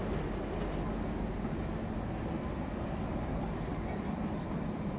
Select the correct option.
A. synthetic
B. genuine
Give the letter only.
B